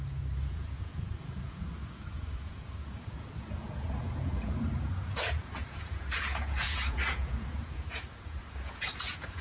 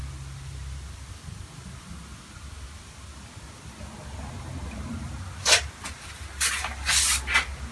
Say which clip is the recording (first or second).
second